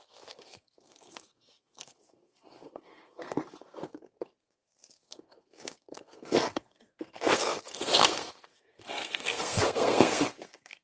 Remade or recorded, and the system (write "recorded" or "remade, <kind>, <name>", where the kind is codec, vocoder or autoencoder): remade, codec, SNAC